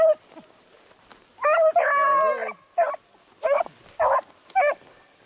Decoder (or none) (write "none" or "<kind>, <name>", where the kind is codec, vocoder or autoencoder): none